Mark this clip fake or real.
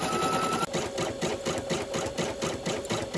real